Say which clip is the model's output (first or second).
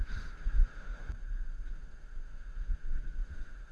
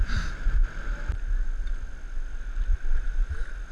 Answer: first